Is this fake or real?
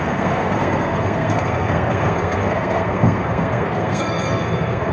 fake